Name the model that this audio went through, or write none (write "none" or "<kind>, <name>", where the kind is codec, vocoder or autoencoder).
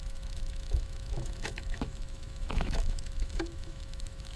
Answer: autoencoder, DAC-VAE